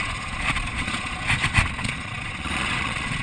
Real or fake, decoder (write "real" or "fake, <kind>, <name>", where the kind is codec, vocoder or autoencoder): fake, vocoder, Vocos